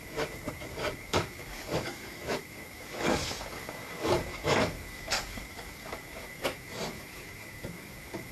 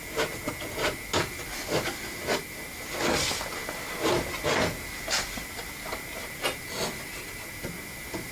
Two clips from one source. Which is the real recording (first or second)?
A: second